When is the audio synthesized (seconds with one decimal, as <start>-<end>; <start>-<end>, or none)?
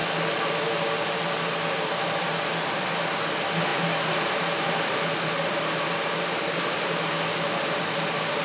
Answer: 3.7-8.4